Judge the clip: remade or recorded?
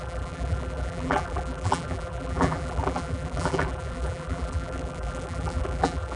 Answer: remade